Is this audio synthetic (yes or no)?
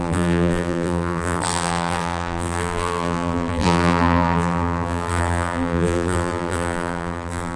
yes